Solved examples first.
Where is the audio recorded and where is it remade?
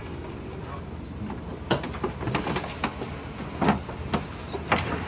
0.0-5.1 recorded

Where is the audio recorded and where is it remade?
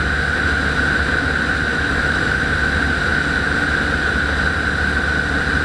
0.0-1.7 recorded; 1.7-2.5 remade; 2.5-5.6 recorded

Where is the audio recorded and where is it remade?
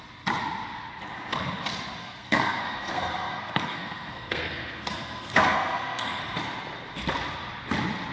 0.0-2.0 recorded; 2.0-6.2 remade; 6.2-8.1 recorded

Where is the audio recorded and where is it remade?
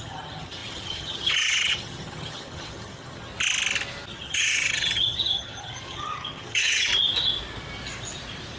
0.0-3.3 remade; 3.3-4.1 recorded; 4.1-6.9 remade; 6.9-8.6 recorded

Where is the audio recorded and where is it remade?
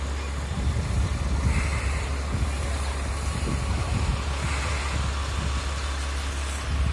0.0-6.9 recorded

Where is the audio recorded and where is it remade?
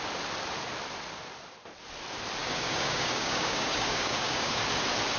0.0-2.4 recorded; 2.4-4.6 remade; 4.6-5.2 recorded